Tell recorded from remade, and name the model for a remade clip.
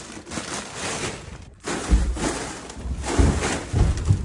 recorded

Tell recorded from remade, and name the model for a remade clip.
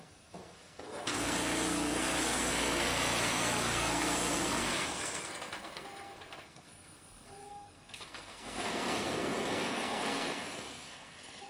remade, codec, SNAC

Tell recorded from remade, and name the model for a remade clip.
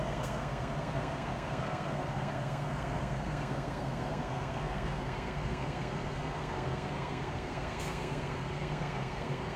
remade, codec, SNAC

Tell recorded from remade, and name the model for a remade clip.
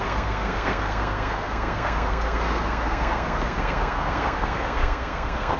remade, codec, SNAC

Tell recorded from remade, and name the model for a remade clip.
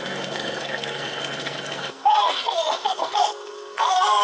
remade, codec, SNAC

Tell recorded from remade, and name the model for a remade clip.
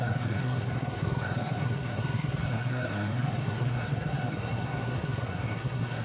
remade, codec, SNAC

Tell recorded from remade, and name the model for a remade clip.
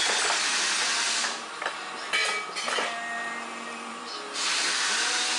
recorded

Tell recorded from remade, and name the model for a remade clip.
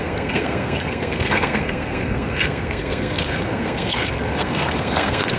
remade, codec, SNAC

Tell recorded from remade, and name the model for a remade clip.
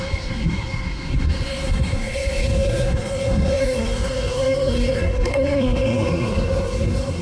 remade, codec, SNAC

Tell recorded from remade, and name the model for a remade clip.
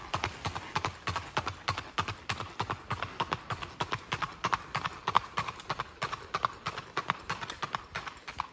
recorded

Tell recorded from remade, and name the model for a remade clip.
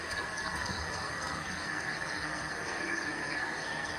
remade, codec, SNAC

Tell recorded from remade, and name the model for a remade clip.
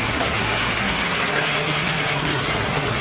remade, codec, SNAC